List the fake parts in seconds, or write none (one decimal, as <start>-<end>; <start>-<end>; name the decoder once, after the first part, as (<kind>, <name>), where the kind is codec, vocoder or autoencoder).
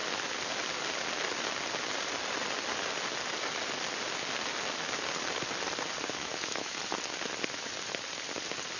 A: 6.2-6.8 (autoencoder, DAC-VAE)